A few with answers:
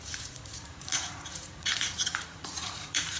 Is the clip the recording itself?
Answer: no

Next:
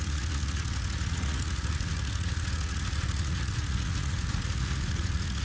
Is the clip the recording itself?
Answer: no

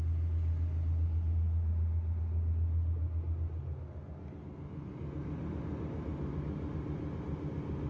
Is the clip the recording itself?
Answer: yes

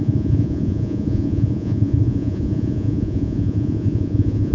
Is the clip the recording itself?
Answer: no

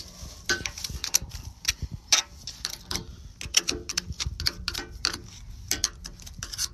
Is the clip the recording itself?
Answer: yes